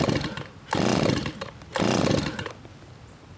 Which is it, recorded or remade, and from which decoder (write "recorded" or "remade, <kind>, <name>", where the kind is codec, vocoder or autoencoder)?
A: recorded